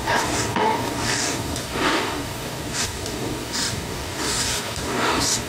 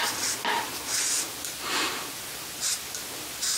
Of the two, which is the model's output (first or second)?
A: first